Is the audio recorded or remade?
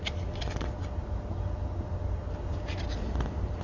recorded